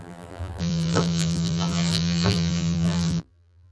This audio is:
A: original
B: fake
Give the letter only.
B